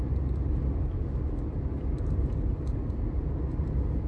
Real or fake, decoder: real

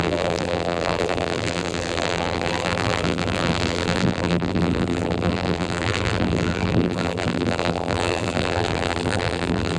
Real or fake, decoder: fake, vocoder, BigVGAN v2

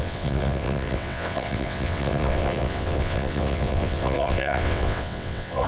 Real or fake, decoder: fake, vocoder, WaveNeXt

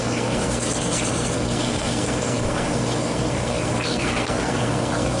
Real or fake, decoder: fake, codec, SNAC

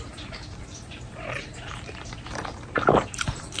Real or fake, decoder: fake, vocoder, BigVGAN v2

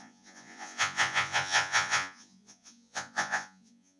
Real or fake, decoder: fake, vocoder, Vocos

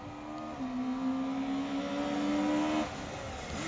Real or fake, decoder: real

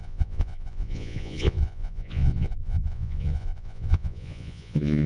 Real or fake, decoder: fake, vocoder, Vocos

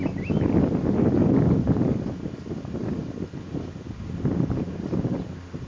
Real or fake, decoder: real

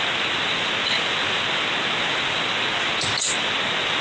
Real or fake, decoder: real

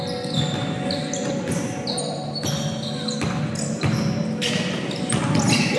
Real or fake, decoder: real